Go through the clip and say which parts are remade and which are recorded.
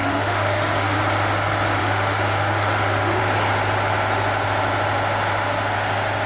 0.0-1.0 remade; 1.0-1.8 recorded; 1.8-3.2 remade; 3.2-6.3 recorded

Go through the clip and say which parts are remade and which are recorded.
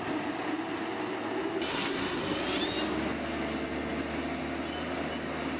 0.0-1.7 recorded; 1.7-2.2 remade; 2.2-5.6 recorded